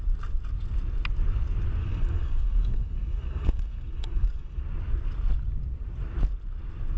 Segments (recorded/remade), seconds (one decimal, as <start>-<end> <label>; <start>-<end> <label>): 0.0-1.8 recorded; 1.8-4.6 remade; 4.6-7.0 recorded

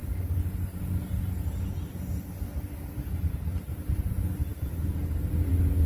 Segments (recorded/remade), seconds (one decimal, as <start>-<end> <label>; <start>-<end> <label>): 0.0-5.9 recorded